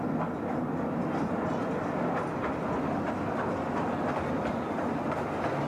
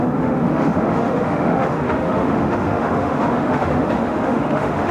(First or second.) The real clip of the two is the first